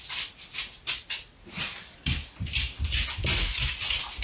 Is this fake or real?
real